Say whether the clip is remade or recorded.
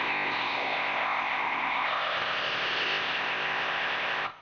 remade